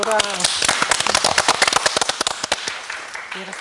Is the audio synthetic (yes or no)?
no